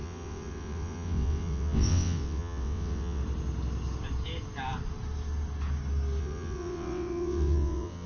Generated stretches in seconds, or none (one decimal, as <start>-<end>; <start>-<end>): 0.0-3.2; 6.2-8.1